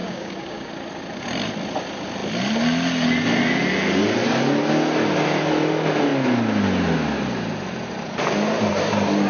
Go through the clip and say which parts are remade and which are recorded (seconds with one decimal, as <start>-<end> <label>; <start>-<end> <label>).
0.0-0.7 remade; 0.7-9.3 recorded